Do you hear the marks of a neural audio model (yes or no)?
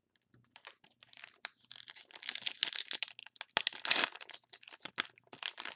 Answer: no